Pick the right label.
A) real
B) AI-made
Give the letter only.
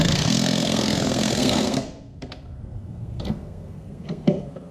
B